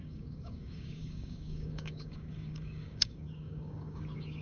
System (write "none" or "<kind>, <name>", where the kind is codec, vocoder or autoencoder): codec, DAC